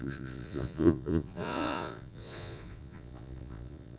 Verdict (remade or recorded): remade